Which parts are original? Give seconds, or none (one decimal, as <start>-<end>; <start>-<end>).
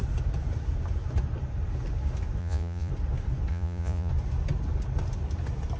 0.0-2.4; 2.9-3.5; 4.1-5.8